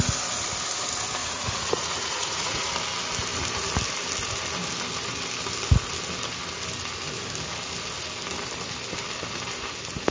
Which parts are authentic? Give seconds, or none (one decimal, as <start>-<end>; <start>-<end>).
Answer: 0.0-1.2; 2.7-10.1